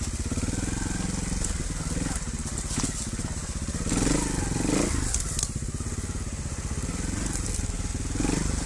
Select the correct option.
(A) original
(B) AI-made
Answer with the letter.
A